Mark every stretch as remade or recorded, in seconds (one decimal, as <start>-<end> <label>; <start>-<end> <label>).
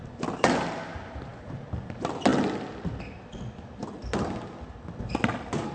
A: 0.0-5.7 recorded